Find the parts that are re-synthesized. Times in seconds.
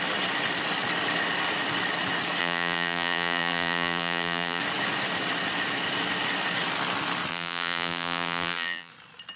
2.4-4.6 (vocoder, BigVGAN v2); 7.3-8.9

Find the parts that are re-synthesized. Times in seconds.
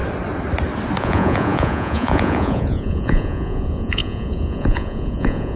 1.0-5.6 (vocoder, Vocos)